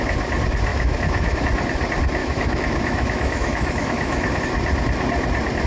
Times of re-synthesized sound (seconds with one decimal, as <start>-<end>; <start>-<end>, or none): 0.7-1.4; 2.2-4.4